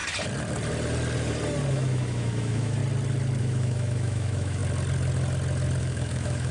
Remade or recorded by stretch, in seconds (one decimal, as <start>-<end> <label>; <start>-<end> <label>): 0.0-1.7 recorded; 1.7-2.8 remade; 2.8-3.4 recorded; 3.4-4.6 remade; 4.6-5.8 recorded; 5.8-6.5 remade